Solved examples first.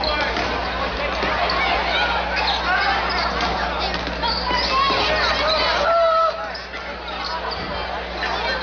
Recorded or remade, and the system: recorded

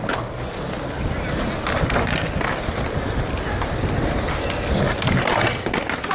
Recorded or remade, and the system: recorded